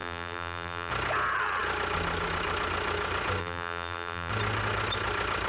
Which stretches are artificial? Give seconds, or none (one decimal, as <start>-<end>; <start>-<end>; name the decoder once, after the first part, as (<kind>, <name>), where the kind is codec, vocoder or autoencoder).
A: 0.0-0.9 (vocoder, BigVGAN v2); 3.4-4.3